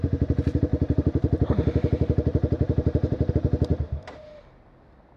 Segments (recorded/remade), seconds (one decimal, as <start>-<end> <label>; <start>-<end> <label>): 0.0-0.7 recorded; 0.7-3.3 remade; 3.3-3.7 recorded; 3.7-4.4 remade; 4.4-5.2 recorded